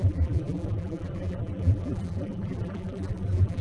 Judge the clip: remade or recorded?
remade